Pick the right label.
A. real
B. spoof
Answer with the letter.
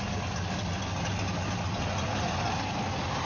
A